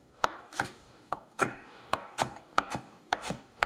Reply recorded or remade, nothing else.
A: remade